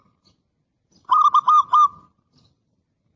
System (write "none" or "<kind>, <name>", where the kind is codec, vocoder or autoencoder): none